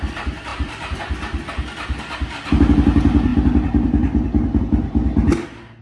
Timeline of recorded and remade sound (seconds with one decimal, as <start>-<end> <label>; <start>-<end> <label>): 0.0-0.5 recorded; 0.5-1.0 remade; 1.0-5.8 recorded